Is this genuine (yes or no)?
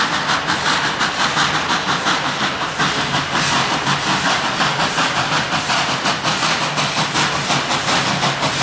yes